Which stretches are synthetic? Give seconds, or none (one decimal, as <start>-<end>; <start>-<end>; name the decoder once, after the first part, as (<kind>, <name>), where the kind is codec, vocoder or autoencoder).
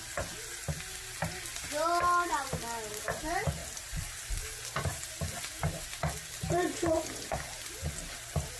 3.6-4.4 (vocoder, BigVGAN v2)